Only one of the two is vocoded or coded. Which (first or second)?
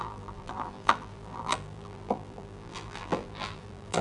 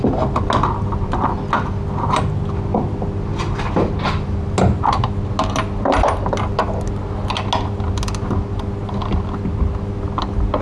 first